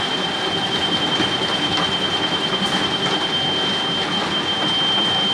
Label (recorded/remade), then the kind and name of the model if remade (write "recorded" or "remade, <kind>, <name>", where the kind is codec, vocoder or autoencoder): recorded